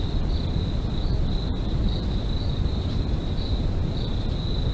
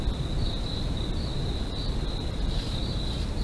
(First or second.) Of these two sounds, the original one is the second